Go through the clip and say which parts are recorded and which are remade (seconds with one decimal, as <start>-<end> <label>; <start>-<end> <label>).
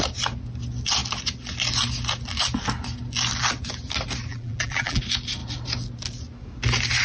0.0-4.3 recorded; 4.3-5.0 remade; 5.0-7.0 recorded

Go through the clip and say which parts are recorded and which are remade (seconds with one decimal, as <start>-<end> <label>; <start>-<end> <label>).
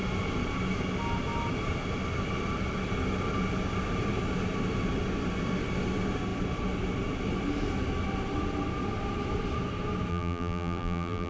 0.0-10.1 recorded; 10.1-11.3 remade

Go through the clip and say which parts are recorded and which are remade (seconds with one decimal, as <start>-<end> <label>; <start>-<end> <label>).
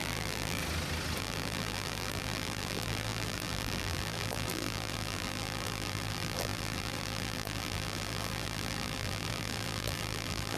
0.0-0.6 remade; 0.6-1.2 recorded; 1.2-10.6 remade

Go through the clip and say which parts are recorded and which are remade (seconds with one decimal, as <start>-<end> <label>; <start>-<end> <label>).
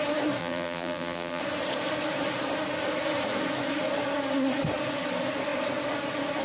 0.0-0.4 recorded; 0.4-1.4 remade; 1.4-6.4 recorded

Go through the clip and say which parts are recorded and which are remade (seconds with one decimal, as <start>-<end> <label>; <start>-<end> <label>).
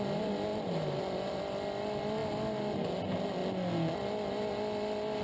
0.0-0.5 recorded; 0.5-1.4 remade; 1.4-5.2 recorded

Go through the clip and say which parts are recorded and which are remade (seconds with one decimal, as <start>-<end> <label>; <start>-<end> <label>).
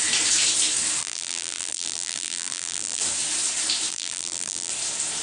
0.0-1.0 recorded; 1.0-3.0 remade; 3.0-3.9 recorded; 3.9-4.7 remade; 4.7-5.2 recorded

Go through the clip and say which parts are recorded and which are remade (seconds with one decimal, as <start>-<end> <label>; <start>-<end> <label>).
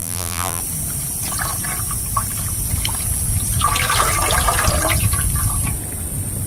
0.0-0.6 remade; 0.6-6.5 recorded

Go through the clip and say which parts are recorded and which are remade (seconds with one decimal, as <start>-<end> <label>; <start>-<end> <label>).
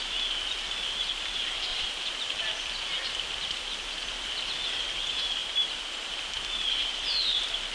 0.0-1.7 recorded; 1.7-2.4 remade; 2.4-5.4 recorded; 5.4-6.2 remade; 6.2-7.7 recorded